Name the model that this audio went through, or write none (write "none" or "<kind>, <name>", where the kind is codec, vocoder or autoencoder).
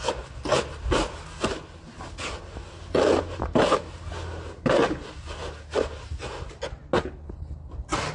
none